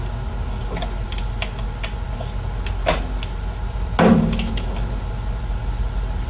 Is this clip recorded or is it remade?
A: recorded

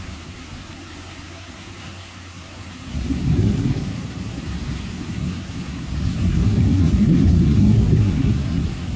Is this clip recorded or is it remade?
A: remade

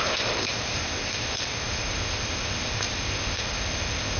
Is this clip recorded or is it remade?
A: remade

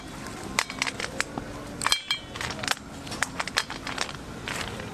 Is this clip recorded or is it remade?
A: recorded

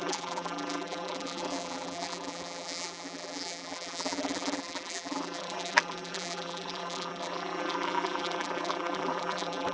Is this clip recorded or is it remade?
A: remade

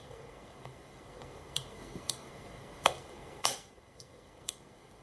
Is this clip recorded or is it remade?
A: remade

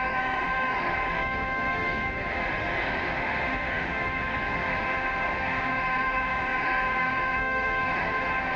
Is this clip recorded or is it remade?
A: remade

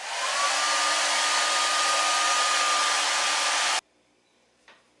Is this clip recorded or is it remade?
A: recorded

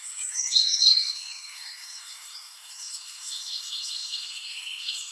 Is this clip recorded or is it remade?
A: remade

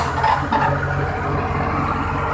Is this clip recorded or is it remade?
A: recorded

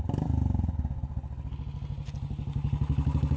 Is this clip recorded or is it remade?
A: recorded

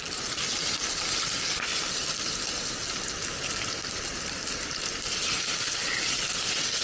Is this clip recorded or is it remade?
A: recorded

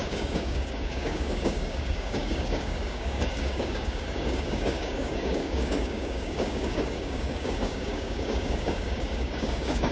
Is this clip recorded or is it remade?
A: remade